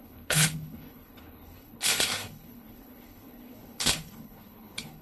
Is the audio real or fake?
fake